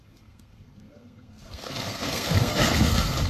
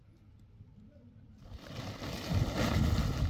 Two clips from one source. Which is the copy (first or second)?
first